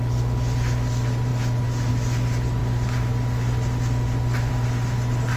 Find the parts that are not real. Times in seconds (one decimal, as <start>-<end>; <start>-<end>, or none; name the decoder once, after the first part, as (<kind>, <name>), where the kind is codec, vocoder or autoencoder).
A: none